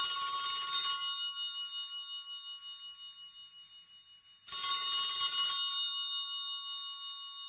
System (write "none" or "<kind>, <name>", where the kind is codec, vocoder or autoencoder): none